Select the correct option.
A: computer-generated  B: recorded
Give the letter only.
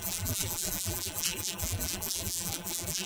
A